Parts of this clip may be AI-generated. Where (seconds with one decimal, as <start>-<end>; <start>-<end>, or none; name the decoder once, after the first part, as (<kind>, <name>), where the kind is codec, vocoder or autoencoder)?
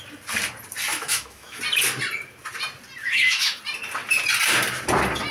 0.9-1.6 (autoencoder, DAC-VAE); 3.0-3.6